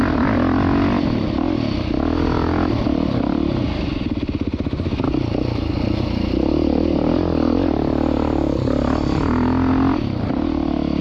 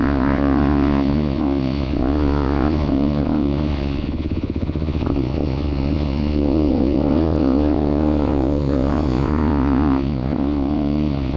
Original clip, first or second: first